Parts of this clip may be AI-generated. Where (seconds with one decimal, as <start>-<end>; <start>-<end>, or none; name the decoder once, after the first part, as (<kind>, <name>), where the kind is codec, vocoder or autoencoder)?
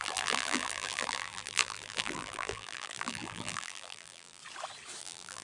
0.0-4.4 (vocoder, BigVGAN v2); 5.0-5.4